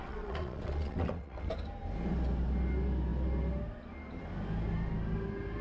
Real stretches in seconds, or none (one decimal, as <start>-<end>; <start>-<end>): 1.5-5.6